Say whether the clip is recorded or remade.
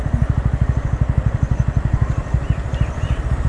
recorded